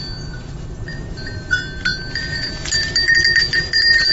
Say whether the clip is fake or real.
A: real